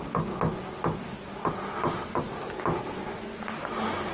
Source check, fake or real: real